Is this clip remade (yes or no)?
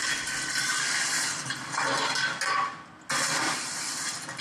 no